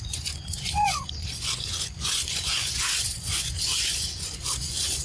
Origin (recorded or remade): remade